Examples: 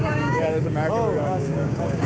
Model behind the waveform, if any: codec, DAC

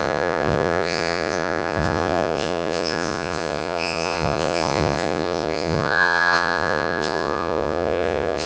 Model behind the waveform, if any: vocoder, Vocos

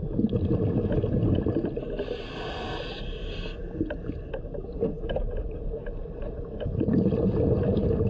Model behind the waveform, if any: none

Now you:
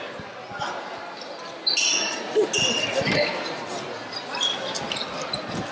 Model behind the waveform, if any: none